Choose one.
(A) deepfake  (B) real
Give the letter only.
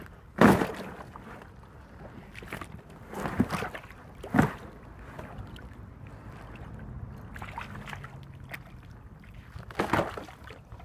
B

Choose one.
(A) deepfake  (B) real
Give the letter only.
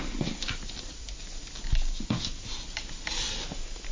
B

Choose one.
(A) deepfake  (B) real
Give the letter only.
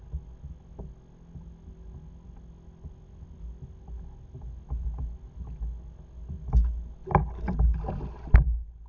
B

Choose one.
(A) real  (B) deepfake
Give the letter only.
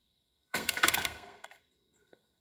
B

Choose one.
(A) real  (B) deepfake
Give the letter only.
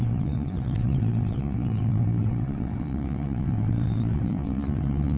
B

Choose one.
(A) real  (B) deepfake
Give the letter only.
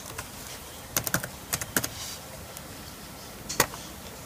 A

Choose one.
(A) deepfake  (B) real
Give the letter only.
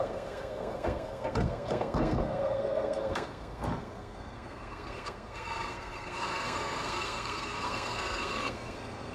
A